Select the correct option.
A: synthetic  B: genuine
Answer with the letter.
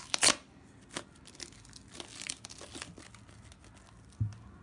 B